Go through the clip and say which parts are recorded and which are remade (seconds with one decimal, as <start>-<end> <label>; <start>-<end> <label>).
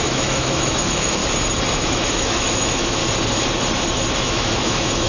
0.0-1.2 remade; 1.2-1.7 recorded; 1.7-3.0 remade; 3.0-4.2 recorded; 4.2-5.1 remade